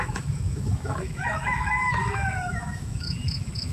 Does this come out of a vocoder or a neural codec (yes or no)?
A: yes